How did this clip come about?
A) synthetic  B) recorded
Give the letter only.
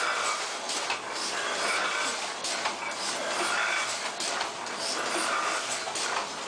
B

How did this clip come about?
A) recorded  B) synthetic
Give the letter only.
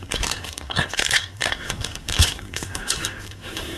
B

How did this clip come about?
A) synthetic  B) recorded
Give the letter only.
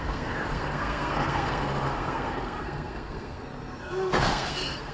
A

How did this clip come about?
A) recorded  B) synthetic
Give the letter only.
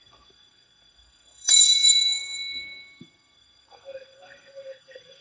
B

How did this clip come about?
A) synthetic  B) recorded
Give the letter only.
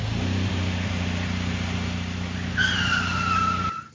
B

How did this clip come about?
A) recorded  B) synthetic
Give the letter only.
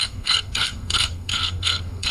B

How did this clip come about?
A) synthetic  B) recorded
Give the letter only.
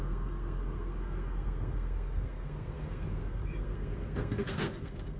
A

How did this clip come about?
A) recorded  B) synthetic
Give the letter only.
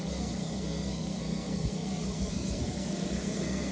B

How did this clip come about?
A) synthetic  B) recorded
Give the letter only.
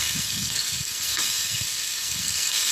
A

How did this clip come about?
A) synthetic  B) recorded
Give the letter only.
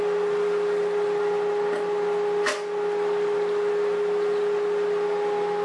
B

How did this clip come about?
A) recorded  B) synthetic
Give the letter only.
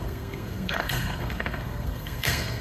B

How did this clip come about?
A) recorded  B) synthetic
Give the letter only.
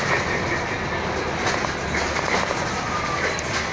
A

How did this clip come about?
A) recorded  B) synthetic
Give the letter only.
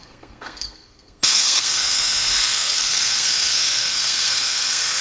B